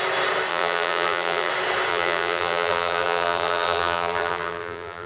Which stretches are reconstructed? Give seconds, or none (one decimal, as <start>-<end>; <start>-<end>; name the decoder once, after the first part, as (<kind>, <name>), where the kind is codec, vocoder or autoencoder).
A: 0.5-1.5 (vocoder, BigVGAN v2); 1.9-5.1